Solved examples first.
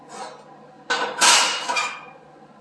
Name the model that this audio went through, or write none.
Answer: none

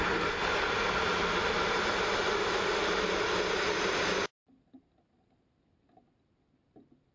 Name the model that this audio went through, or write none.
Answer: none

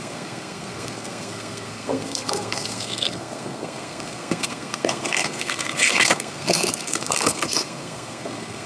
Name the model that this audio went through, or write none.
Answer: codec, SNAC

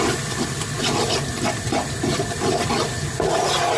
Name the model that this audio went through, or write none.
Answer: none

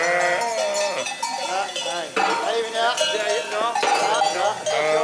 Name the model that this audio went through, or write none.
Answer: none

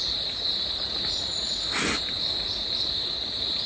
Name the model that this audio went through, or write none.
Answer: none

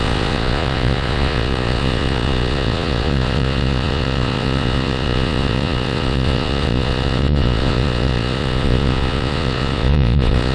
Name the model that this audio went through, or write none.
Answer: vocoder, Vocos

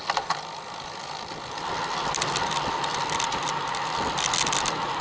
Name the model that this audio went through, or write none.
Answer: none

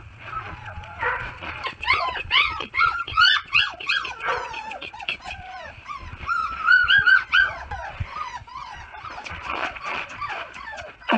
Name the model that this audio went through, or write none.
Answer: vocoder, Vocos